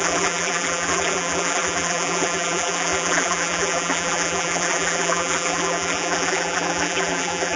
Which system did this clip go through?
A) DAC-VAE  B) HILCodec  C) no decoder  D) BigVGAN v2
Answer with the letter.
D